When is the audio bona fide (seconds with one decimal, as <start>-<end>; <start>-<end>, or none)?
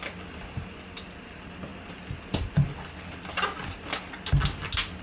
0.0-5.0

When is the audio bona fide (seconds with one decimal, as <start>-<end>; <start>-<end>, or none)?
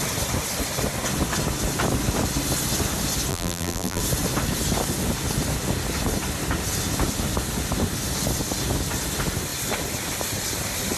0.0-3.3; 4.0-11.0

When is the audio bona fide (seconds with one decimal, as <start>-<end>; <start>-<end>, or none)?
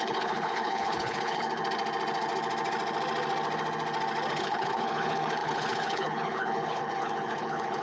1.6-4.3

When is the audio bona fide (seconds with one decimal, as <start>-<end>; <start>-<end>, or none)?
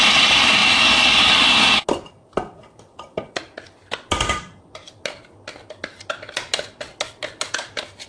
0.0-8.1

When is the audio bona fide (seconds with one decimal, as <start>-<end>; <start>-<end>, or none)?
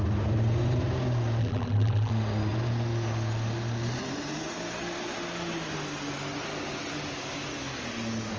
0.0-1.4; 2.1-8.4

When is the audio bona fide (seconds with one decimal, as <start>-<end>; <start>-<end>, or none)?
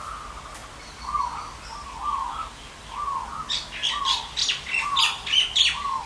0.0-6.1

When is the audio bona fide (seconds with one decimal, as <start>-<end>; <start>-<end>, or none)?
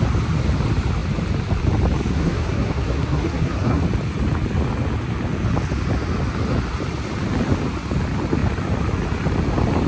0.0-2.1; 3.8-9.9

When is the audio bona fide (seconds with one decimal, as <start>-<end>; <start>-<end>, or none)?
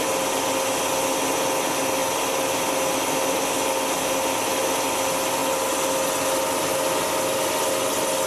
0.0-8.3